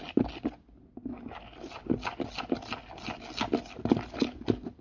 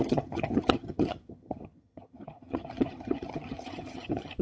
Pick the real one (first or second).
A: first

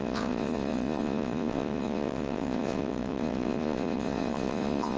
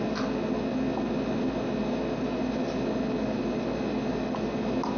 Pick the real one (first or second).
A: second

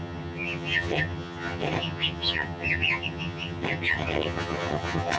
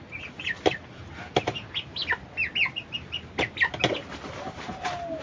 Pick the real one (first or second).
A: second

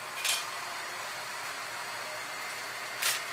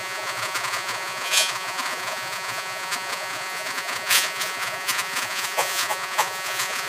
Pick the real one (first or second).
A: first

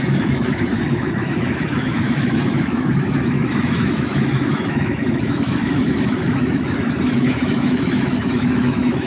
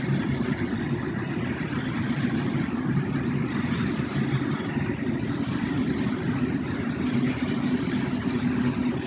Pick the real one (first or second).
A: second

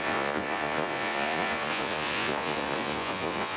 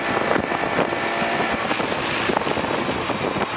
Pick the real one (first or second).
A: second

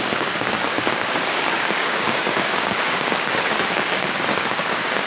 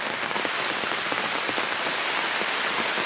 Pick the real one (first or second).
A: second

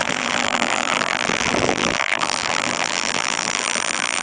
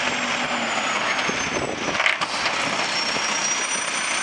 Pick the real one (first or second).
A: second